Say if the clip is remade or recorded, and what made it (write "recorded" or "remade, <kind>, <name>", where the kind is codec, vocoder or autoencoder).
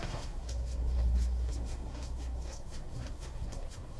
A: remade, codec, SNAC